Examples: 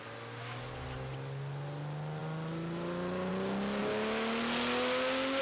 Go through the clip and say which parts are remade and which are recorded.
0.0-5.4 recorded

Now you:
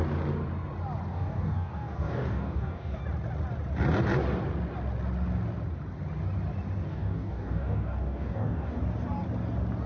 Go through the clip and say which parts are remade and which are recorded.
0.0-1.1 recorded; 1.1-3.0 remade; 3.0-6.9 recorded; 6.9-8.8 remade; 8.8-9.9 recorded

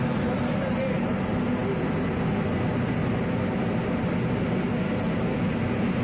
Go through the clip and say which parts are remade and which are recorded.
0.0-6.0 recorded

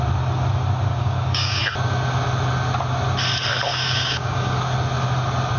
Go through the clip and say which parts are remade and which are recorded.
0.0-0.9 recorded; 0.9-1.6 remade; 1.6-3.7 recorded; 3.7-4.6 remade; 4.6-5.6 recorded

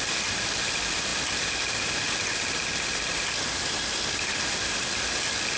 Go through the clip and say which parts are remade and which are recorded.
0.0-5.6 recorded